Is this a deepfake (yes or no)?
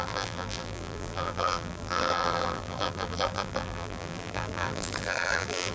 yes